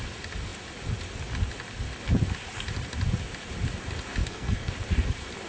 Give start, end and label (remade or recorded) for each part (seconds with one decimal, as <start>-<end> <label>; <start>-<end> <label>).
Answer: 0.0-4.2 recorded; 4.2-4.7 remade; 4.7-5.5 recorded